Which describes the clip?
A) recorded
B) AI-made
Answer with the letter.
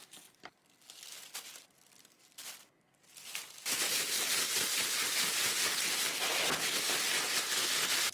A